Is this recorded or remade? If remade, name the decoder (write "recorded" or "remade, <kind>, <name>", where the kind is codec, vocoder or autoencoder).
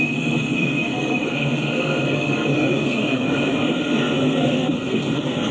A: remade, codec, SNAC